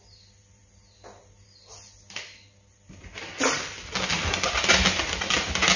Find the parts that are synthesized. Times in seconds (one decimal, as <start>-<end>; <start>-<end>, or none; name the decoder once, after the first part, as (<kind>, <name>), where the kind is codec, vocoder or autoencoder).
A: none